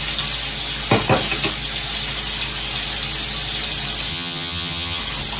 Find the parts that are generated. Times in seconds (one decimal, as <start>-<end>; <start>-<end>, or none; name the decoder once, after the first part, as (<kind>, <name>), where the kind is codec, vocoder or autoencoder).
4.1-5.0 (vocoder, HiFi-GAN)